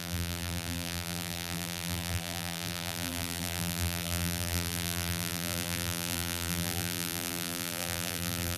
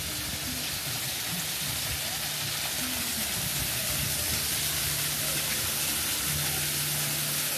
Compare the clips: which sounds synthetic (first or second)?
first